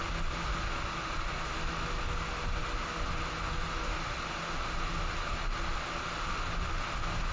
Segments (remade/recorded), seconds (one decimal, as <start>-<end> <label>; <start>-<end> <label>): 0.0-7.3 recorded